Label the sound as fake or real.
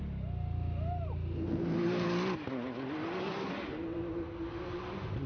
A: real